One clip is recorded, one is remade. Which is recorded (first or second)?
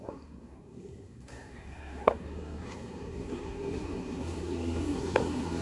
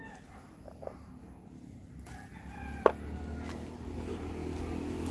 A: second